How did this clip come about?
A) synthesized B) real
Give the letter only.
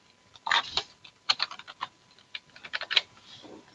A